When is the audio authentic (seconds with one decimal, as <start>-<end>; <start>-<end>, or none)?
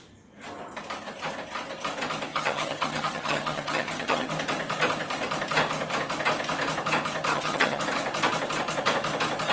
0.0-2.3; 4.3-7.3; 7.8-9.5